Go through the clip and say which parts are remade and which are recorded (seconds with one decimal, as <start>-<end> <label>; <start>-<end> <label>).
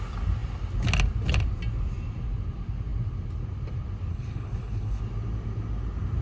0.0-4.1 recorded; 4.1-5.0 remade; 5.0-6.2 recorded